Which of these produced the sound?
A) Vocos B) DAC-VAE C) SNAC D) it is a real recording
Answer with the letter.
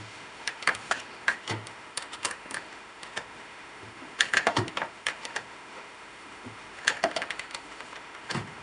B